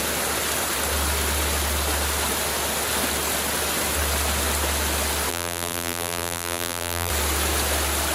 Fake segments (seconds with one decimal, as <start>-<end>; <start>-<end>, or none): 5.3-7.1